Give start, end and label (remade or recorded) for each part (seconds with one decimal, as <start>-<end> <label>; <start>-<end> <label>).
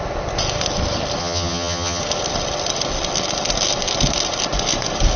0.0-1.2 recorded; 1.2-2.0 remade; 2.0-5.2 recorded